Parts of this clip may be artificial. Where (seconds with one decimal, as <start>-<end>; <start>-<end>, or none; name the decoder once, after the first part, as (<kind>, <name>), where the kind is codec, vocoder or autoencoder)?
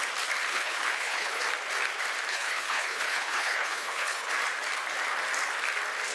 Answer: 0.5-1.4 (codec, HILCodec); 2.3-4.3